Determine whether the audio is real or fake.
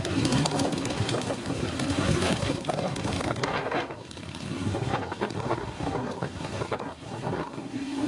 fake